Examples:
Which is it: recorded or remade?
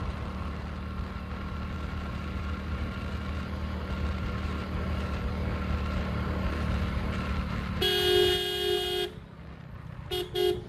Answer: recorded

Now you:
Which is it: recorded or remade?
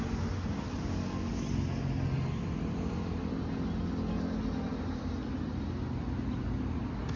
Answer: recorded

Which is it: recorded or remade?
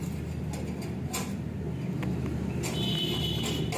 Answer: recorded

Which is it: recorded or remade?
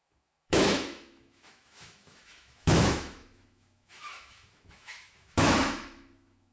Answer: remade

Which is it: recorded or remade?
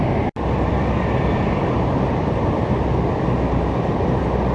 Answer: recorded